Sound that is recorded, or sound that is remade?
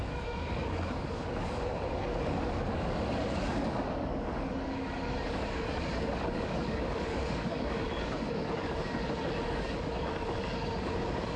remade